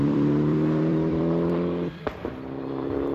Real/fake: fake